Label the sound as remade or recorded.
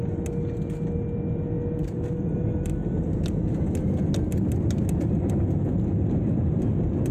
recorded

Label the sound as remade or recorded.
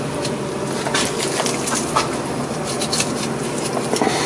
recorded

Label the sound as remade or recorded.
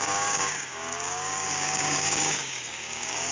remade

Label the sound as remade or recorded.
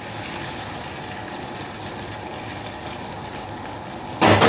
recorded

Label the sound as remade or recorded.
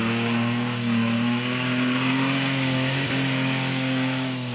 remade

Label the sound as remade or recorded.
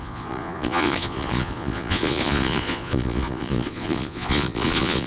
remade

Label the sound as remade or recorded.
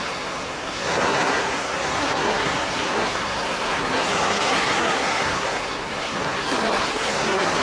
remade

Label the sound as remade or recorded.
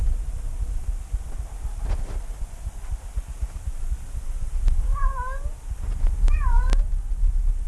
recorded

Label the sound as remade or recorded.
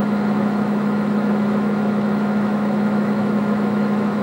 remade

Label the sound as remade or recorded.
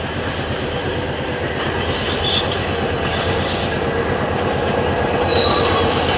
recorded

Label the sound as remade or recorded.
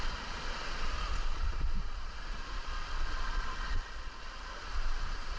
remade